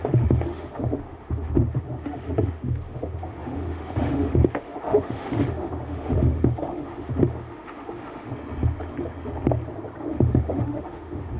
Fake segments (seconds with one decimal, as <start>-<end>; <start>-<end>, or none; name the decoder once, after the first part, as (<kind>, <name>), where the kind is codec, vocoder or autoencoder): 0.0-8.3 (autoencoder, DAC-VAE); 10.1-11.4